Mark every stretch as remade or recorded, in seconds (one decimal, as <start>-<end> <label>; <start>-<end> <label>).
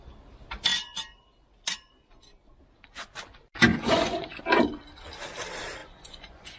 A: 0.0-3.7 recorded; 3.7-4.4 remade; 4.4-5.8 recorded; 5.8-6.6 remade